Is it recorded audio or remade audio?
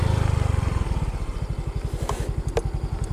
recorded